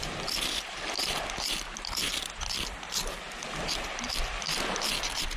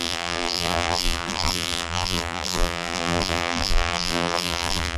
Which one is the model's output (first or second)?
second